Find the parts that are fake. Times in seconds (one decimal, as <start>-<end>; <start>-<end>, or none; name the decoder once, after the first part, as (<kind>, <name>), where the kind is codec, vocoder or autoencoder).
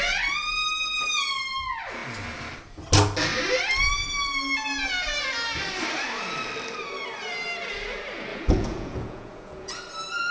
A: 8.3-9.8 (vocoder, Vocos)